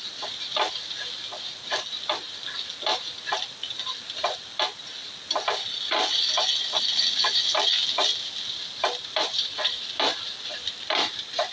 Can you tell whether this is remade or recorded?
remade